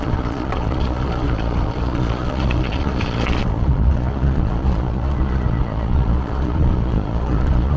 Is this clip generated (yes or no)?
yes